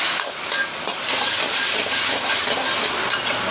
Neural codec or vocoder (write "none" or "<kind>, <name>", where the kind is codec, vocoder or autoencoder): none